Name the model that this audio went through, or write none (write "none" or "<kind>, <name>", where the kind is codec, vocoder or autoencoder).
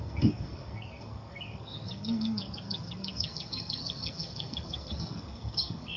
codec, SNAC